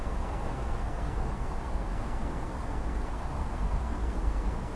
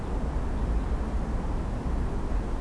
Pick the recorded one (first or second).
second